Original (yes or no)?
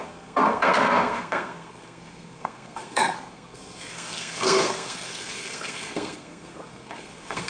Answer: no